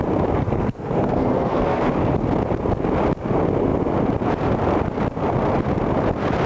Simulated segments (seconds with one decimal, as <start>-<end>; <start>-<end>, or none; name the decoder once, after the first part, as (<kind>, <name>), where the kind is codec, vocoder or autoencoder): 0.4-1.9 (codec, SNAC)